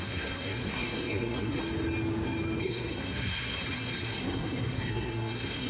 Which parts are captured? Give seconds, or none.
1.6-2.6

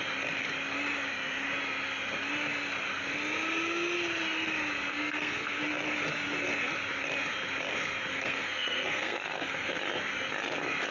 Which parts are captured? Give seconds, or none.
0.0-4.9; 5.6-8.1; 9.8-10.9

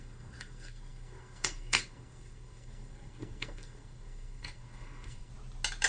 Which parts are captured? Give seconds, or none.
5.3-5.9

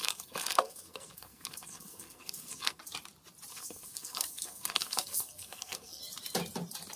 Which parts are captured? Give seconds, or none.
2.8-3.5; 6.0-7.0